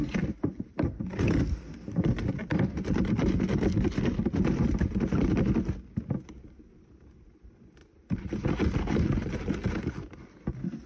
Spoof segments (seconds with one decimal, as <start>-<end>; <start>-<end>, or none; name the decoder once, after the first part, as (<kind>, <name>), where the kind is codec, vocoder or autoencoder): 7.8-8.5 (vocoder, BigVGAN v2)